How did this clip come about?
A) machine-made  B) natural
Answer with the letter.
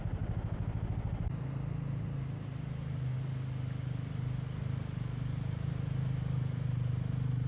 B